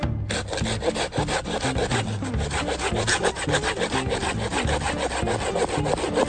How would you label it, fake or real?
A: real